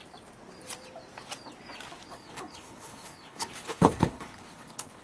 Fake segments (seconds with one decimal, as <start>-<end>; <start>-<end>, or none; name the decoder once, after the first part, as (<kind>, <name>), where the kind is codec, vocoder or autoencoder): 2.1-5.0 (codec, HILCodec)